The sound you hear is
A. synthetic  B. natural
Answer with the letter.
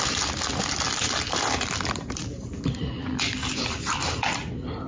A